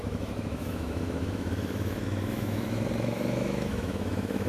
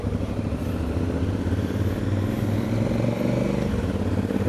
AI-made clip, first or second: first